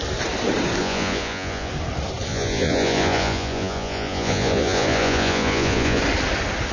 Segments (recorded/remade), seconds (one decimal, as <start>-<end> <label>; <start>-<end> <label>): 0.0-0.8 recorded; 0.8-1.7 remade; 1.7-2.3 recorded; 2.3-6.0 remade; 6.0-6.7 recorded